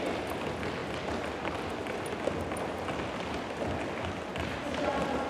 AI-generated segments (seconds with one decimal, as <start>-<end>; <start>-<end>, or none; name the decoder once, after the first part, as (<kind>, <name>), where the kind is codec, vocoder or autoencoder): none